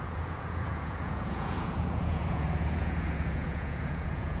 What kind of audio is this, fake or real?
fake